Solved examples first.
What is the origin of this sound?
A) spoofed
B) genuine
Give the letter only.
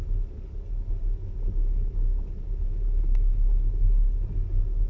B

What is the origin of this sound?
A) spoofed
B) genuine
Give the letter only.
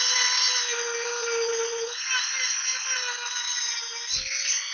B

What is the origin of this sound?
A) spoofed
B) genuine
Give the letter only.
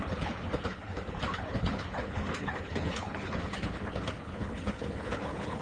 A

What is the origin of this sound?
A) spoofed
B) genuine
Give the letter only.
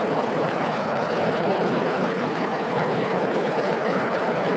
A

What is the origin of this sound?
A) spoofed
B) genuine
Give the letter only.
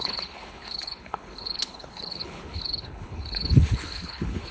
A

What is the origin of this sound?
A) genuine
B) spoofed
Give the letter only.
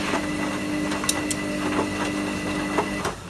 A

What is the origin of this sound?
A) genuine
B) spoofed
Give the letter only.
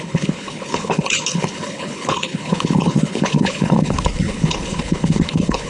B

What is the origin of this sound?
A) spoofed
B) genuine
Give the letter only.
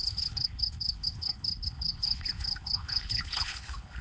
A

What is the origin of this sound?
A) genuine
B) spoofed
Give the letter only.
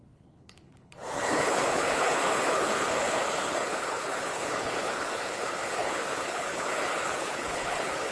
B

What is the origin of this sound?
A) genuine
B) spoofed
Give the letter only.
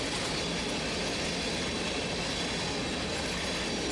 A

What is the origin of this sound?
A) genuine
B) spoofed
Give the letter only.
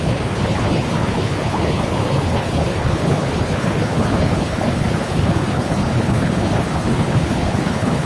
B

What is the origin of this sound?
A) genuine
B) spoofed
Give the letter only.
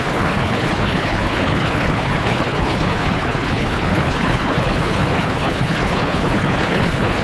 B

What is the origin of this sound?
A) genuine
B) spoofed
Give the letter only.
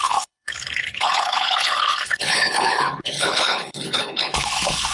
B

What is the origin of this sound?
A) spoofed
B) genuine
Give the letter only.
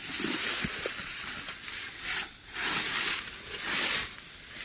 B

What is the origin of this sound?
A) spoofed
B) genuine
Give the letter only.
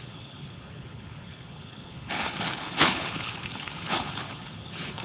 A